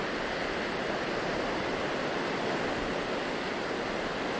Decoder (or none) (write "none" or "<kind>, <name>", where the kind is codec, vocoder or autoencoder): none